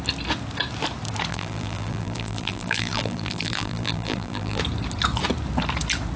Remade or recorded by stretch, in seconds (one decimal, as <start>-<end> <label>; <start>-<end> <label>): 0.0-1.3 recorded; 1.3-4.6 remade; 4.6-6.2 recorded